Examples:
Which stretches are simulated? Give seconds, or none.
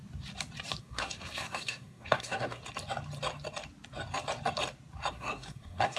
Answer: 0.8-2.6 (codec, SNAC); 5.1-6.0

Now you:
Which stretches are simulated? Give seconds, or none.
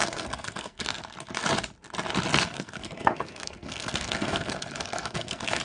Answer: 0.0-1.0 (codec, SNAC); 2.3-5.6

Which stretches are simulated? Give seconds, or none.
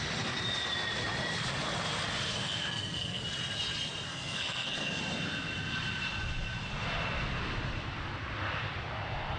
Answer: 2.4-3.2 (codec, SNAC); 4.1-5.0